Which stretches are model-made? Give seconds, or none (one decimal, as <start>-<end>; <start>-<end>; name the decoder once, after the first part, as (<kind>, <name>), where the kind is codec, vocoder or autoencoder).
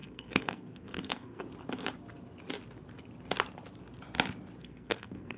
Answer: 0.0-1.4 (codec, SNAC); 4.6-5.4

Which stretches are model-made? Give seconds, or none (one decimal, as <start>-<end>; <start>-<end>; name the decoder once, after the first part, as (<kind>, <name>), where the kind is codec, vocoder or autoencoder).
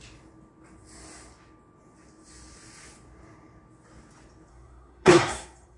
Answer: 4.5-5.8 (codec, SNAC)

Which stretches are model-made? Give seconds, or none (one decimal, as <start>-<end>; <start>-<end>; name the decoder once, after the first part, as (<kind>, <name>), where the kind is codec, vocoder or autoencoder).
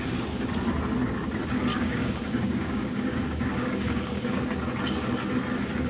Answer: 1.7-4.4 (codec, DAC)